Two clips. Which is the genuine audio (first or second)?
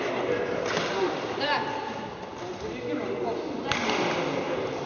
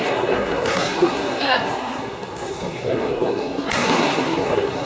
first